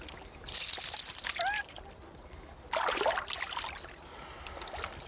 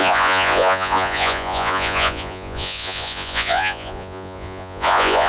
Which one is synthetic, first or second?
second